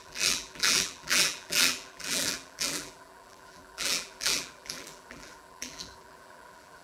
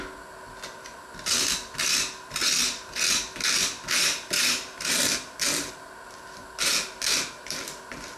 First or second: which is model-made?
first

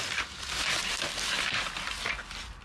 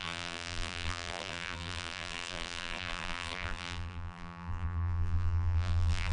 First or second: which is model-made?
second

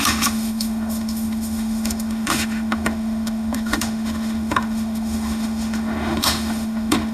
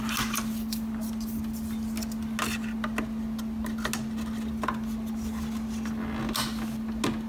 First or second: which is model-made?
first